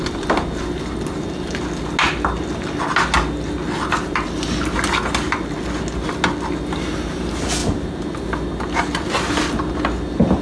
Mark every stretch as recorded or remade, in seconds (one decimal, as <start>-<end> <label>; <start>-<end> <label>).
0.0-10.4 recorded